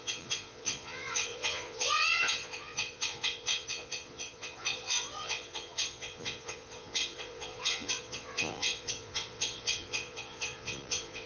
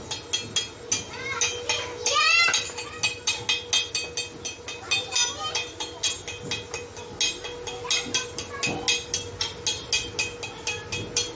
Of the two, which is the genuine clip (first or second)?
second